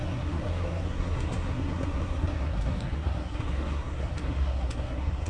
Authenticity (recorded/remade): remade